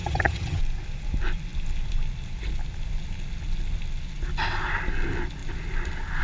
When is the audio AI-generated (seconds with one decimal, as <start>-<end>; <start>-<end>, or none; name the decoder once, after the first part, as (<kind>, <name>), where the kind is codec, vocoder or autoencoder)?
0.0-0.6 (vocoder, HiFi-GAN)